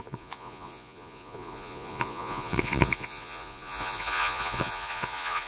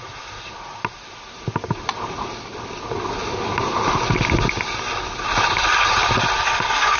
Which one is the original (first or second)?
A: second